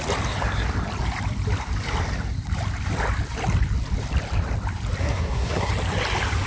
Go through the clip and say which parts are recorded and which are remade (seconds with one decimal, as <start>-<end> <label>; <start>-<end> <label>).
0.0-5.0 recorded; 5.0-5.7 remade; 5.7-6.5 recorded